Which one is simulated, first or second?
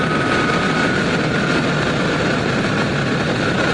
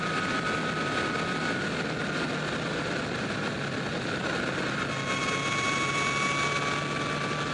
first